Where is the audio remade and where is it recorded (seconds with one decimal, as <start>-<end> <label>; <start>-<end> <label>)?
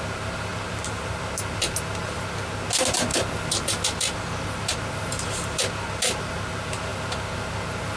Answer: 0.0-8.0 recorded